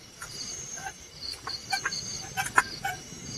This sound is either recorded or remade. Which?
remade